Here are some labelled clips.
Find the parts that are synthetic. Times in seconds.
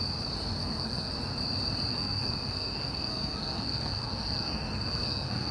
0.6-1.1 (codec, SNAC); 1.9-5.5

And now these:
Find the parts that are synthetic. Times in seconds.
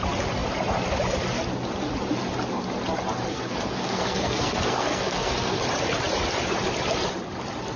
3.3-5.6 (codec, SNAC)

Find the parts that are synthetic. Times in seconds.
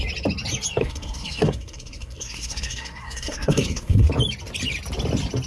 0.8-4.1 (codec, SNAC)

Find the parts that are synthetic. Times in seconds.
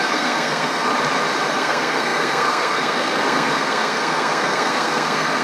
0.0-0.9 (codec, SNAC); 1.5-5.4